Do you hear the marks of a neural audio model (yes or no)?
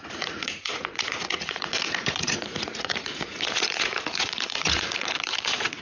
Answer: yes